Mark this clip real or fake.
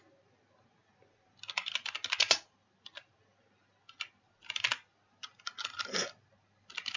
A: real